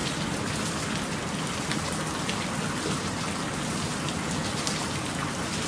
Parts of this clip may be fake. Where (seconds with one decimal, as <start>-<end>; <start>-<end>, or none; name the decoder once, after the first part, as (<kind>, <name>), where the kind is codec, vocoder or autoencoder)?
none